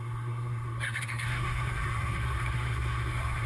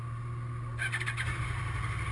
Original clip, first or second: second